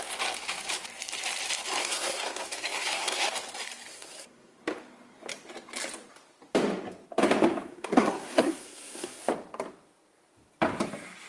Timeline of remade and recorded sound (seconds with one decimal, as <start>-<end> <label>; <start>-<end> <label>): 0.0-1.8 recorded; 1.8-3.3 remade; 3.3-3.9 recorded; 3.9-4.6 remade; 4.6-7.7 recorded; 7.7-9.2 remade; 9.2-11.3 recorded